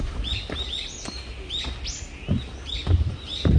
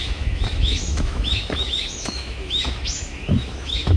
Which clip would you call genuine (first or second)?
first